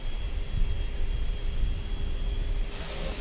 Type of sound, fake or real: real